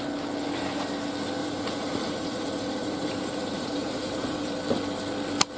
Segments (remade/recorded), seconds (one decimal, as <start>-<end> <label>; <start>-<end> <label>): 0.0-1.4 recorded; 1.4-4.5 remade; 4.5-5.6 recorded